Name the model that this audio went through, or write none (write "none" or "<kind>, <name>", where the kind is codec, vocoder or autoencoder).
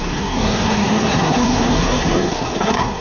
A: codec, SNAC